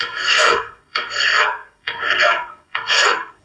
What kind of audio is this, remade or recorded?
remade